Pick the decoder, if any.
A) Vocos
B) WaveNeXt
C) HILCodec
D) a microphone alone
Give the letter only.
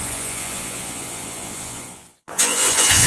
A